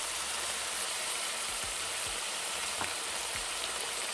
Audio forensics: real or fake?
fake